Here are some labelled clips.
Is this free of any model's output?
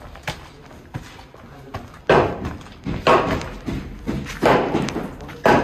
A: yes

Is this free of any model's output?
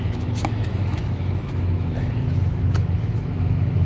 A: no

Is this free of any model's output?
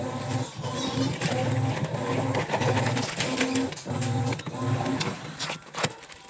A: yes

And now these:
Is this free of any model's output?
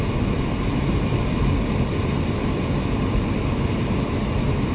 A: yes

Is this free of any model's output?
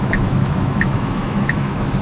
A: no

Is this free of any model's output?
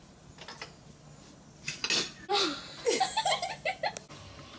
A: yes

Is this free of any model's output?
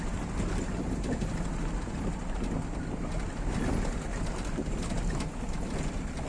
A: yes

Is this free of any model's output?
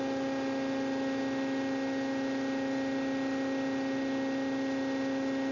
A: yes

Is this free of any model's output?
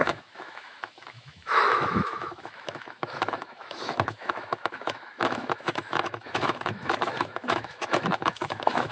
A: no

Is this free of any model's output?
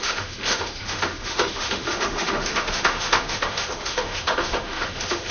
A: no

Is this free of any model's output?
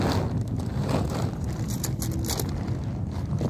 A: yes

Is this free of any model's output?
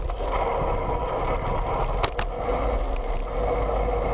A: yes